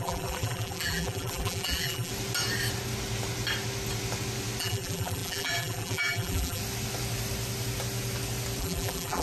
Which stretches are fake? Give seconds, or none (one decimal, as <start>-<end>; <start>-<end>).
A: 0.0-2.1; 4.6-6.6; 8.6-9.2